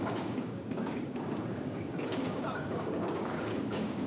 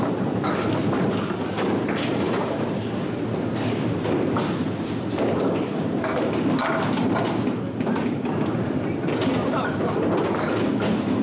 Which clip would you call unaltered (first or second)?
second